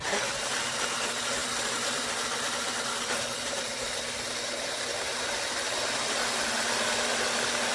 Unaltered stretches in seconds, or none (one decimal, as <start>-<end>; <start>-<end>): 0.0-7.7